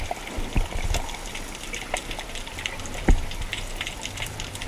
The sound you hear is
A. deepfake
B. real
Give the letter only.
B